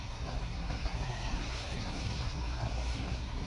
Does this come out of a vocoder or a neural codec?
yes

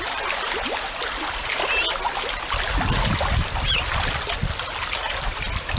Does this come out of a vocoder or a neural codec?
no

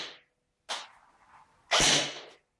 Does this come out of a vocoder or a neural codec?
no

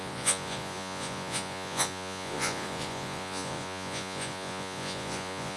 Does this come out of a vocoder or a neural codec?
yes